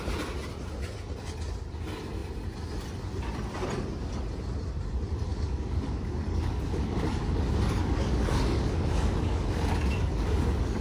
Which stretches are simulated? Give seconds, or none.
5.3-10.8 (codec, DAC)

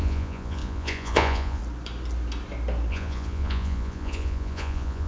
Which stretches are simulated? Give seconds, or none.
0.0-1.6 (vocoder, Vocos); 2.9-5.1

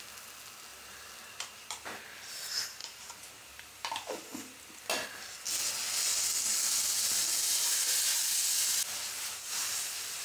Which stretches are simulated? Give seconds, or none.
0.7-1.8 (vocoder, BigVGAN v2); 2.8-3.5